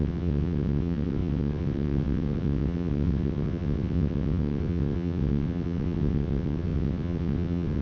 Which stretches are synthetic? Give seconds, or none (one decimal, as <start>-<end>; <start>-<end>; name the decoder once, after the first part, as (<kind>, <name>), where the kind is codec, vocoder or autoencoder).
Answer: 0.0-7.8 (vocoder, WaveNeXt)